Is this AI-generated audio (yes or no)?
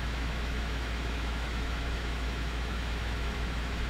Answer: yes